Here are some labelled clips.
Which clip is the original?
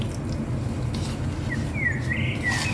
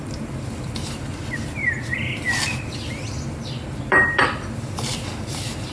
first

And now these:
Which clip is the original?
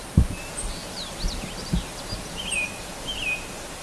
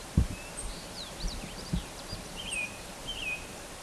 first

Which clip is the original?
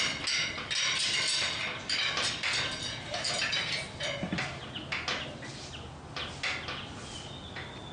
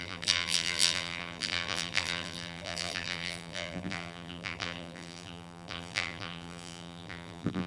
first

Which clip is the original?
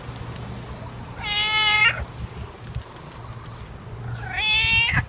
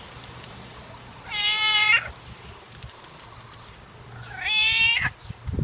first